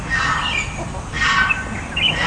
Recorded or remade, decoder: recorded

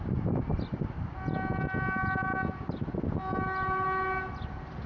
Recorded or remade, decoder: recorded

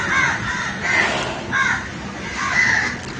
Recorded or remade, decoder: recorded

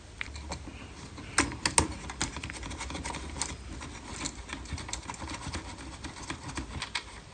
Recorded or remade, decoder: recorded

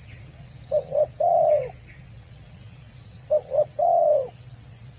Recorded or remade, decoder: remade, vocoder, WaveNeXt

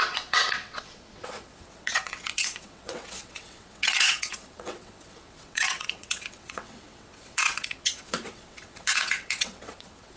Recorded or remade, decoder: remade, vocoder, WaveNeXt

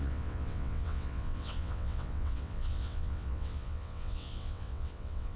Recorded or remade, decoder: remade, vocoder, WaveNeXt